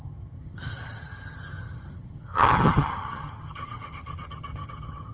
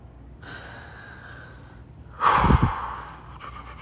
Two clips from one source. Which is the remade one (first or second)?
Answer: first